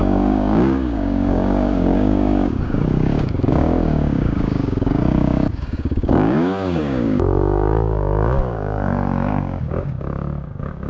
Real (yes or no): no